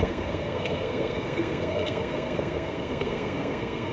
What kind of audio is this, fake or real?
fake